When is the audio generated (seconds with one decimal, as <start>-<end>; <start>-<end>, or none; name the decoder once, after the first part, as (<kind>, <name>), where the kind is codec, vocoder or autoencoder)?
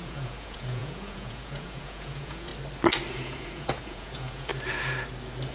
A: 0.0-2.5 (vocoder, Vocos); 3.1-4.5